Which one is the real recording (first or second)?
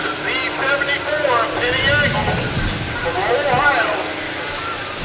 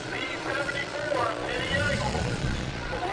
first